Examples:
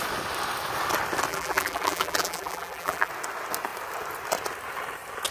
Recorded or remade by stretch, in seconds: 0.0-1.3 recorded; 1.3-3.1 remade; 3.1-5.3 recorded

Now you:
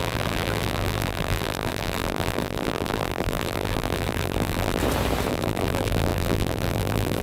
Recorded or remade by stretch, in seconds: 0.0-4.8 remade; 4.8-5.3 recorded; 5.3-7.2 remade

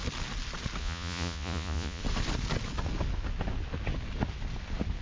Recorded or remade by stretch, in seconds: 0.0-0.8 recorded; 0.8-2.0 remade; 2.0-5.0 recorded

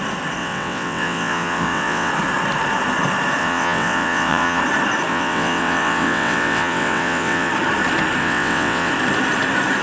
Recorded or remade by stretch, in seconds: 0.0-0.4 recorded; 0.4-2.1 remade; 2.1-3.4 recorded; 3.4-4.6 remade; 4.6-5.1 recorded; 5.1-7.5 remade; 7.5-8.2 recorded; 8.2-8.9 remade; 8.9-9.8 recorded

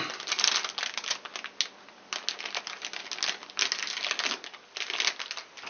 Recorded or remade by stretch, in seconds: 0.0-5.7 recorded

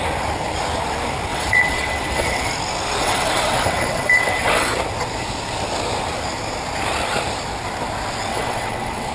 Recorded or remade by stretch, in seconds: 0.0-1.3 recorded; 1.3-2.5 remade; 2.5-3.0 recorded; 3.0-4.7 remade; 4.7-8.3 recorded; 8.3-9.1 remade

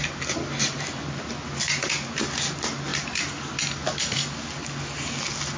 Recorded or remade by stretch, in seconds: 0.0-5.6 recorded

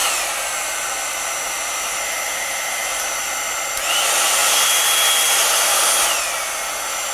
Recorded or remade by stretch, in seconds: 0.0-1.4 remade; 1.4-4.4 recorded; 4.4-5.1 remade; 5.1-7.1 recorded